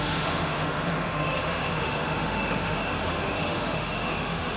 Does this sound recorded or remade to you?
remade